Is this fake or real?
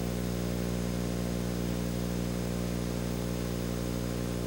real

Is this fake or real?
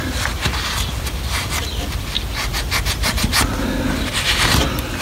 real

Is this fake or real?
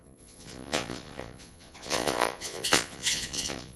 fake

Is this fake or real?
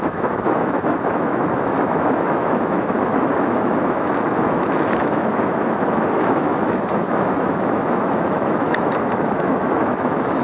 fake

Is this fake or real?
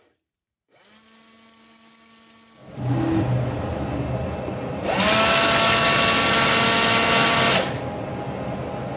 real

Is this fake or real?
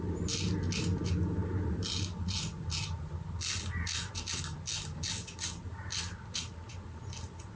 real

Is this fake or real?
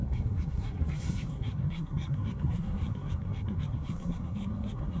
fake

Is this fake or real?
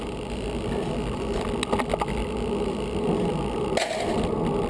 real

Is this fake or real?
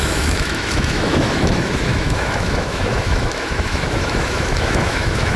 fake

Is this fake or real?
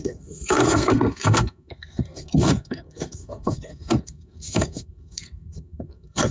fake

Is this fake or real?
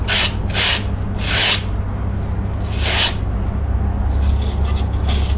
real